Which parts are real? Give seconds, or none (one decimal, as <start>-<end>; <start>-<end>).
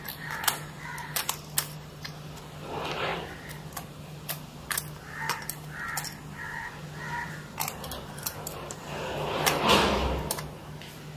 0.0-11.2